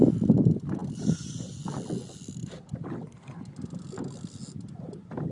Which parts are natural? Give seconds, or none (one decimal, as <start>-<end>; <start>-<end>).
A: 0.0-0.8; 4.0-5.3